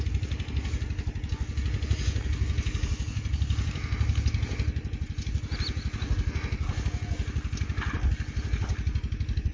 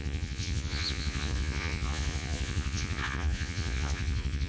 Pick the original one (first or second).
first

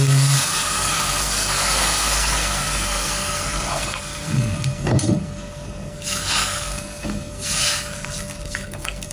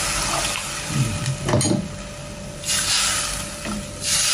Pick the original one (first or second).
second